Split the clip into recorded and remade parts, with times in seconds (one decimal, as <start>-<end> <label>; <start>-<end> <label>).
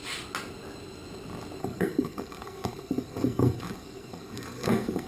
0.0-1.6 recorded; 1.6-5.1 remade